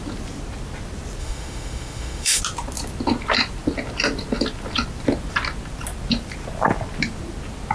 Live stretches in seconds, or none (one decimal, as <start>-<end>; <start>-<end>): 0.0-1.2; 2.4-7.7